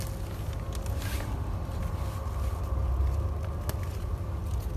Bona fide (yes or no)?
yes